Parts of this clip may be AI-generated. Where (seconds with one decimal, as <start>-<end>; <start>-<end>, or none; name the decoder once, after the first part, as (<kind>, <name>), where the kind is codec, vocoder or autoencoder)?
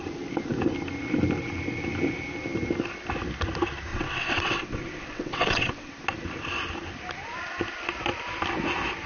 3.9-5.9 (vocoder, WaveNeXt)